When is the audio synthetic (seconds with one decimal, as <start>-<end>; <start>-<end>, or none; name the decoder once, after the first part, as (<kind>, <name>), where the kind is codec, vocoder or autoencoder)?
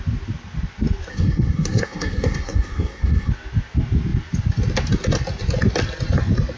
1.1-3.3 (codec, SNAC)